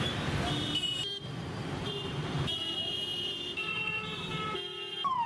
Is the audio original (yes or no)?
no